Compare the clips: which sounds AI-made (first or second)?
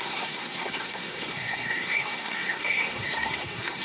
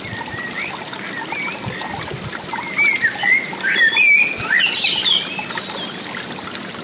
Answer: first